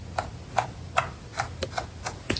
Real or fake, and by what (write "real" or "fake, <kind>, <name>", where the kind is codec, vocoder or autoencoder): real